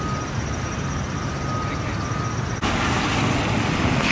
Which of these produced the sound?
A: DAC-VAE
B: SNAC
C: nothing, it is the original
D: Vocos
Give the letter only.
C